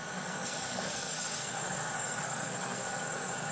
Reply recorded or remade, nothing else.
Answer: remade